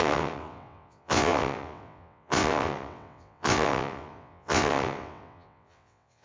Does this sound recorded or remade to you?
remade